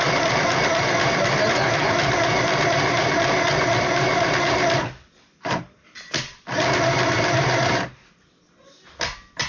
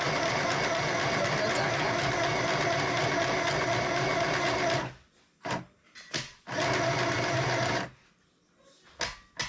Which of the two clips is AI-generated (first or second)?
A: first